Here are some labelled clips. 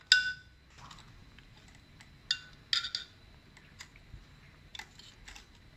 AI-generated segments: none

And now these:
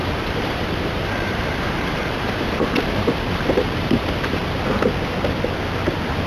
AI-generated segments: 0.0-4.4 (vocoder, BigVGAN v2); 5.8-6.3

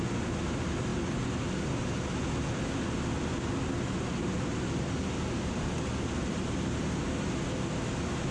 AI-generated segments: none

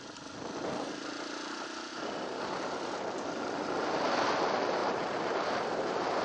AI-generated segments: 1.9-2.4 (vocoder, BigVGAN v2); 4.8-5.6

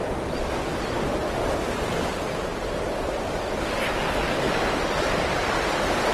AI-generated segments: 2.5-3.5 (vocoder, BigVGAN v2)

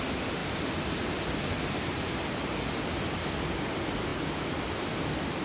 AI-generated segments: none

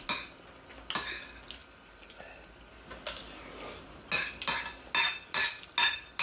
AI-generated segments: none